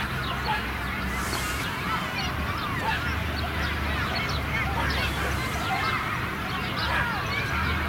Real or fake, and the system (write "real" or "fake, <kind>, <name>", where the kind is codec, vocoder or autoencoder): real